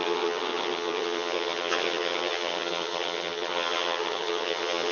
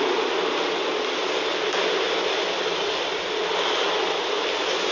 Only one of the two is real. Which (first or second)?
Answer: second